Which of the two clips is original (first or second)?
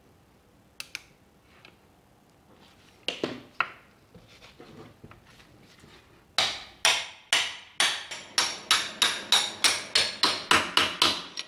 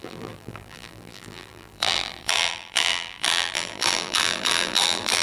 first